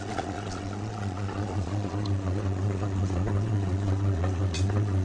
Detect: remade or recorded remade